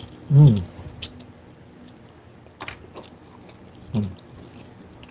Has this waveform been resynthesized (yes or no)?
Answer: no